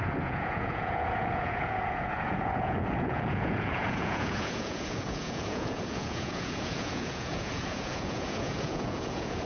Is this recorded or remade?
remade